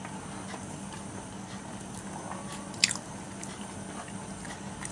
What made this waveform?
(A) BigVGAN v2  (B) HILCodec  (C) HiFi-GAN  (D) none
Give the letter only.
D